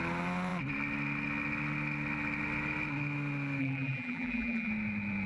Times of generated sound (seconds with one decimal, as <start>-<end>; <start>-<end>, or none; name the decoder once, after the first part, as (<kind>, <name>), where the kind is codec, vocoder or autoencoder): 3.6-4.7 (vocoder, BigVGAN v2)